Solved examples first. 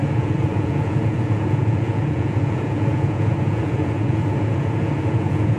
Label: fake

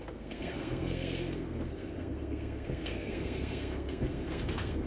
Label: fake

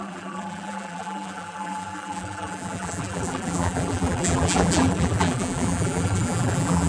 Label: fake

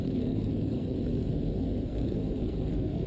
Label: fake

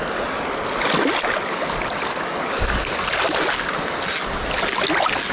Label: real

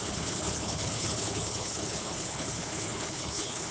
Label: fake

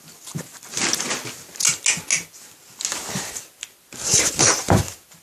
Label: real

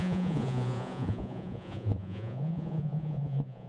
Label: fake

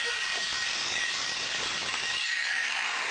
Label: fake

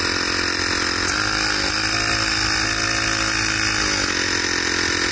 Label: real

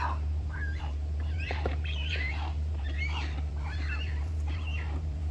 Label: fake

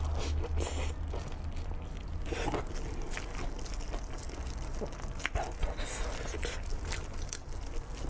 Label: real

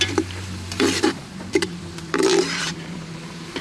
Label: fake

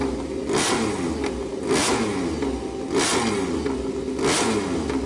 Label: real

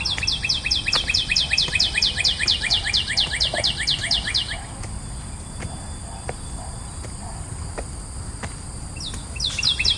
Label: real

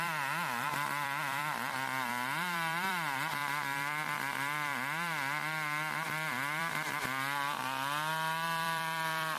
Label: fake